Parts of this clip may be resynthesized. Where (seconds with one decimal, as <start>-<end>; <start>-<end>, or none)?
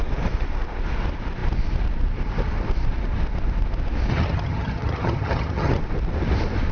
4.1-5.8